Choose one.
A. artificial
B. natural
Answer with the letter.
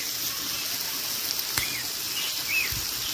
B